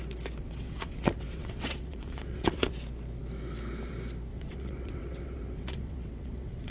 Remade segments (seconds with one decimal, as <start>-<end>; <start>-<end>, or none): 0.4-2.7; 4.3-6.7